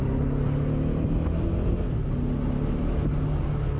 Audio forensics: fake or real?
real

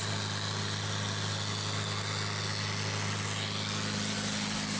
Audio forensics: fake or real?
real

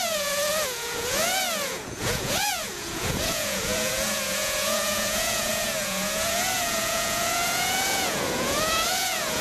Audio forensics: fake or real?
fake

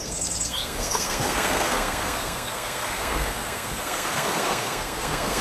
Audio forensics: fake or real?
fake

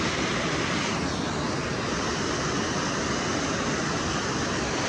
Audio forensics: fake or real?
real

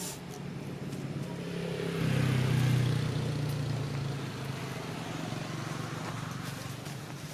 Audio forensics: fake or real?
real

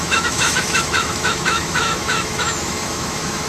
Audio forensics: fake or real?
fake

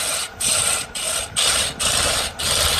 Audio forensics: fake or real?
real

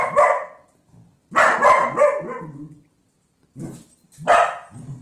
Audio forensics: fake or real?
real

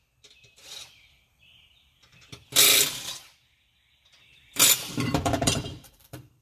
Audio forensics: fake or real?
fake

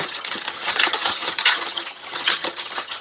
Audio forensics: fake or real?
fake